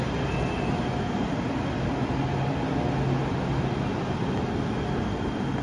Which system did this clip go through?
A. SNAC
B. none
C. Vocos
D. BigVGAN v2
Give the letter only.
B